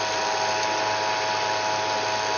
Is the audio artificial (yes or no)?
no